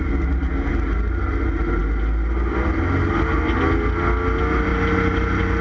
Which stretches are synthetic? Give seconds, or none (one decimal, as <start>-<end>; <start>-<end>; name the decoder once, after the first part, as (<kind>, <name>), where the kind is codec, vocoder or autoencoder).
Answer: none